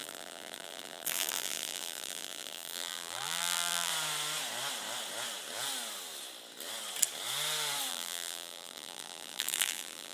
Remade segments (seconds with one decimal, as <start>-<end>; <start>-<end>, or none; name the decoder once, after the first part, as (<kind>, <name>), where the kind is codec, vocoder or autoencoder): 0.0-3.9 (vocoder, BigVGAN v2); 7.9-10.1

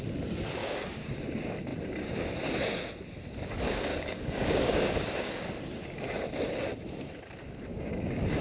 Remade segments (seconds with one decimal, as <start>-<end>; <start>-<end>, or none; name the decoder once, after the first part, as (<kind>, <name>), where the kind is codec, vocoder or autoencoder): 0.6-1.2 (codec, DAC); 3.9-5.4

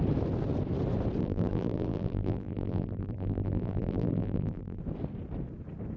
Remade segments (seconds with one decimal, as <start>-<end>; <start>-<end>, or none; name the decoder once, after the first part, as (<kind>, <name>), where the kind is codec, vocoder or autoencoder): 1.2-4.8 (vocoder, BigVGAN v2)

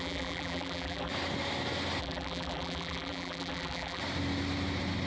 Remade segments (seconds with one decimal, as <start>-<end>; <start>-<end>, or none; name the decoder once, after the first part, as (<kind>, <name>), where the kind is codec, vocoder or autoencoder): 0.0-1.1 (vocoder, BigVGAN v2); 2.0-4.0

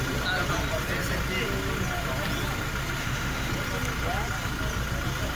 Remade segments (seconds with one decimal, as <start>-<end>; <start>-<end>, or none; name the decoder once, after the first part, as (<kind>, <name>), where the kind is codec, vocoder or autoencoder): 3.0-3.5 (autoencoder, DAC-VAE)

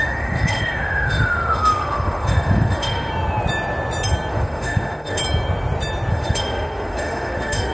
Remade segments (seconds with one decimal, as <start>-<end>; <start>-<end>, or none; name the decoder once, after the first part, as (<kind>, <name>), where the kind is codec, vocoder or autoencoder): 0.0-3.1 (autoencoder, DAC-VAE); 4.3-5.2; 6.1-7.7